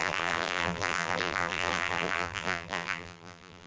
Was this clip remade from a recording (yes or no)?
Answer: yes